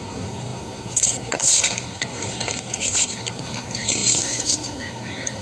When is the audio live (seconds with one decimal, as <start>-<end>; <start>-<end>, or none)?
none